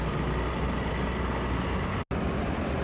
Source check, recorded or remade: recorded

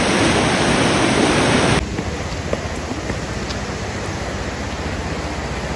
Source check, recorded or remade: recorded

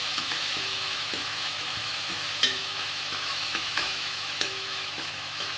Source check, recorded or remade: remade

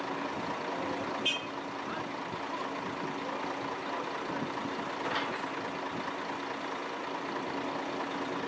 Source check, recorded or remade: recorded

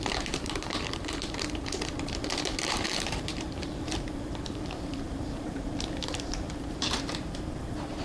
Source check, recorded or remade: remade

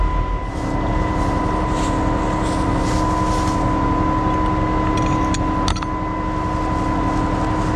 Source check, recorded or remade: recorded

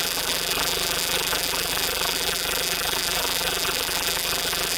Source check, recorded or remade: remade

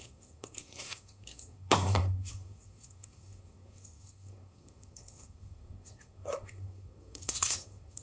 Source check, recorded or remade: remade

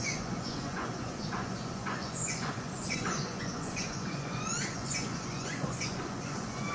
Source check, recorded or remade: remade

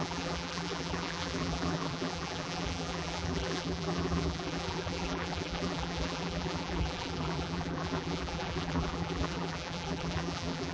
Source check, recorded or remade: remade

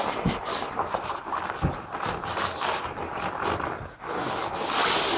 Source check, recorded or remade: recorded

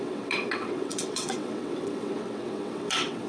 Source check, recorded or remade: remade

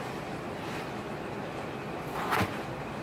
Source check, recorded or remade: recorded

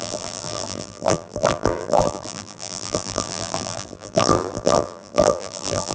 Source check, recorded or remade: remade